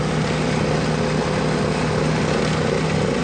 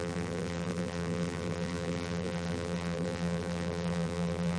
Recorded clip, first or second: first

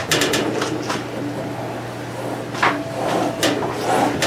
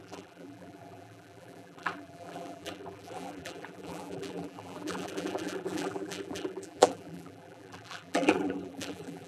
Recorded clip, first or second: first